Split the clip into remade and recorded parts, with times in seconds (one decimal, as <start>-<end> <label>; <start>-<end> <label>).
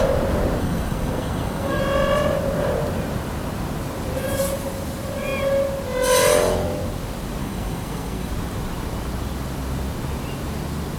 0.0-0.6 recorded; 0.6-1.8 remade; 1.8-7.4 recorded; 7.4-8.3 remade; 8.3-11.0 recorded